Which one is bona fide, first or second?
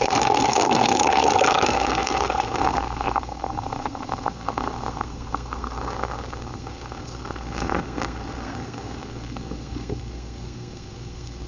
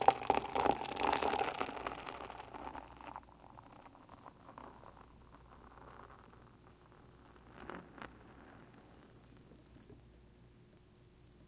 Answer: second